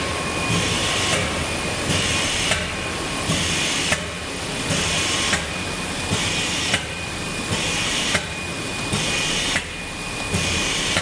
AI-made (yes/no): yes